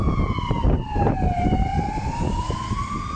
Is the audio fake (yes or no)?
no